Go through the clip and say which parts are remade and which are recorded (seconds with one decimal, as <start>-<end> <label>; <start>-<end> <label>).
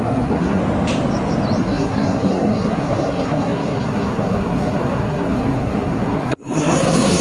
0.0-0.6 remade; 0.6-1.6 recorded; 1.6-7.2 remade